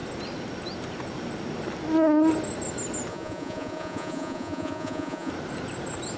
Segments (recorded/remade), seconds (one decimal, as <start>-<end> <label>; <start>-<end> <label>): 0.0-3.1 recorded; 3.1-5.3 remade; 5.3-6.2 recorded